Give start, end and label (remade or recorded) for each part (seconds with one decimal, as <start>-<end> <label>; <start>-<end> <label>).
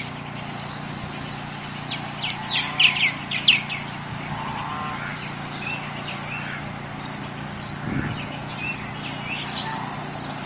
0.0-10.5 recorded